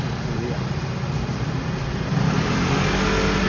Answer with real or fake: real